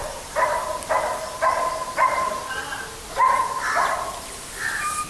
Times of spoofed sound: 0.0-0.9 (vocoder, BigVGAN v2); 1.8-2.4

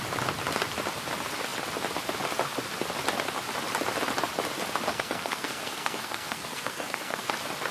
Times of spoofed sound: 4.9-7.3 (codec, SNAC)

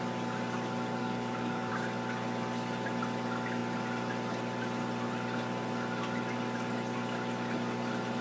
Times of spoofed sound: 1.0-1.7 (codec, DAC)

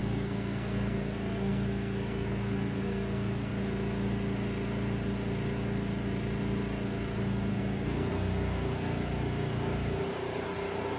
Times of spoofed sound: 0.0-3.5 (codec, SNAC); 7.5-8.1